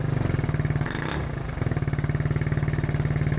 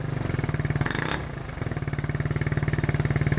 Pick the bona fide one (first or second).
first